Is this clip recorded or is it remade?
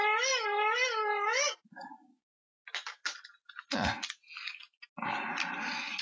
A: recorded